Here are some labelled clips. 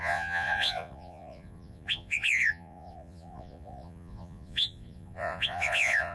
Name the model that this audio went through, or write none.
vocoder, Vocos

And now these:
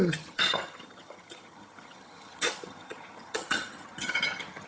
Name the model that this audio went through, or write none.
vocoder, HiFi-GAN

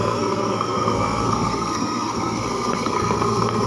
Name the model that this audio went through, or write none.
codec, SNAC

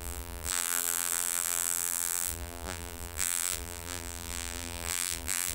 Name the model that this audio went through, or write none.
vocoder, BigVGAN v2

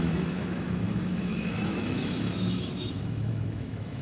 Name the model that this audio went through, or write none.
autoencoder, DAC-VAE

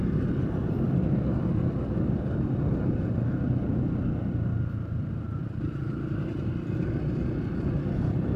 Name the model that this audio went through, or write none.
none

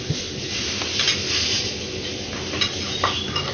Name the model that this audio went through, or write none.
none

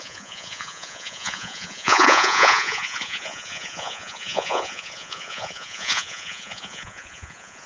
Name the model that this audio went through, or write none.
vocoder, Vocos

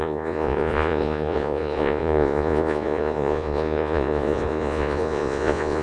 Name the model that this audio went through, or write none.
vocoder, Vocos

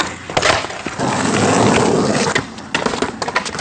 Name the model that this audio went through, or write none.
none